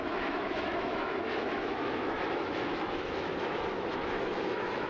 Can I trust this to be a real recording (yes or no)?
no